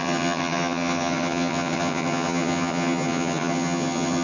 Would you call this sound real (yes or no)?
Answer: no